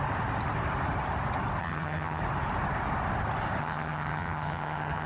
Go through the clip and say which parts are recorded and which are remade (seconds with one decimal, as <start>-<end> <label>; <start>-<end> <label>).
0.0-1.6 recorded; 1.6-2.2 remade; 2.2-3.6 recorded; 3.6-5.1 remade